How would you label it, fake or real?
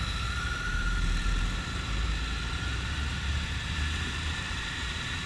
fake